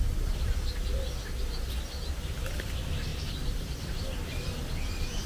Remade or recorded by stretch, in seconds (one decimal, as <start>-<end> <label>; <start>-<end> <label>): 0.0-1.2 remade; 1.2-2.2 recorded; 2.2-5.3 remade